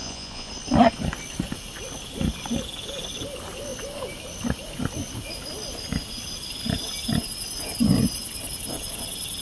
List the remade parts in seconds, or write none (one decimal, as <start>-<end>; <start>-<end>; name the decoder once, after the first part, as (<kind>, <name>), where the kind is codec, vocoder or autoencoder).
0.0-0.5 (vocoder, Vocos)